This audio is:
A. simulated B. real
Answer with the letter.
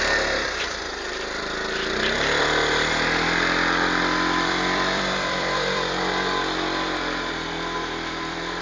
A